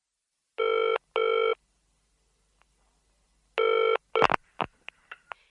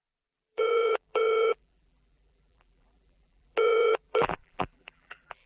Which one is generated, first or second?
second